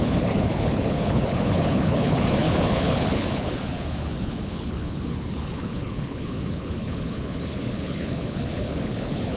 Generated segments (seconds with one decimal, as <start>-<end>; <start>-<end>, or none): 0.0-9.4

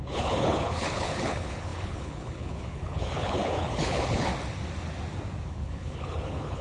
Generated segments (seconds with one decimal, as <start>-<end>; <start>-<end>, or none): 0.0-4.3; 5.5-6.6

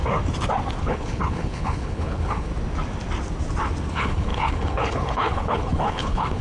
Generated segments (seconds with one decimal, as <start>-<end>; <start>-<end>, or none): 0.8-2.5; 3.9-6.4

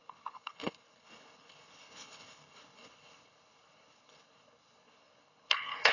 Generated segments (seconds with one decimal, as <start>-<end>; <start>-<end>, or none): 0.0-5.9

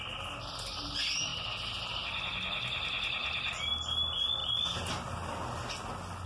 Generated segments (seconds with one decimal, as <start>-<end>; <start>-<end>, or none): none

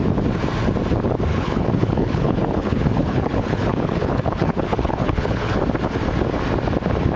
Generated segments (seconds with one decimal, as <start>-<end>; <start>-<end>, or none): 1.3-5.6